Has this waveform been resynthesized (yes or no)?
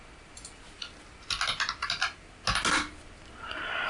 no